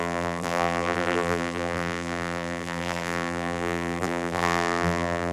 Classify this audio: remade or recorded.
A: remade